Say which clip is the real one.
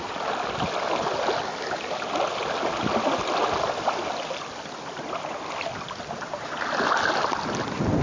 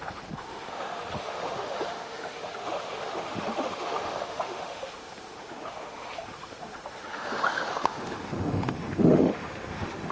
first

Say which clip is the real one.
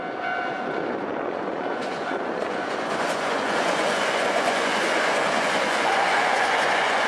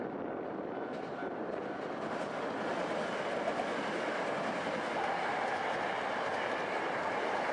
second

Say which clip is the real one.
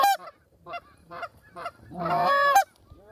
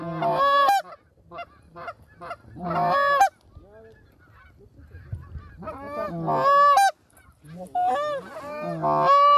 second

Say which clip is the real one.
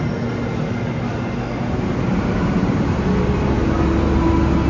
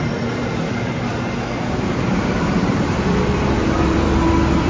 first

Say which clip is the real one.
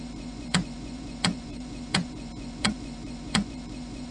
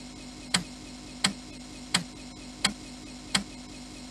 second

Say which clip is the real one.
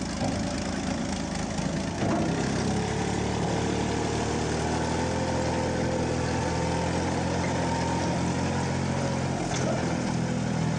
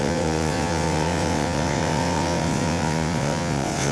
first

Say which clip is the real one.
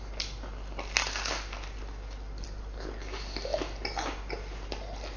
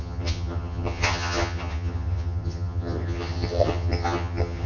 first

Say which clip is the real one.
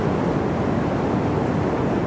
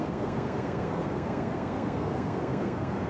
first